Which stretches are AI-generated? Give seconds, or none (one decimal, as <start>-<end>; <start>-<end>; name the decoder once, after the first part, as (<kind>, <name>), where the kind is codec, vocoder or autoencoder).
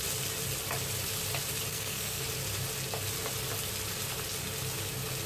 1.7-2.2 (codec, SNAC)